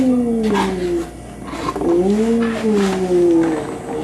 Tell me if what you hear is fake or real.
real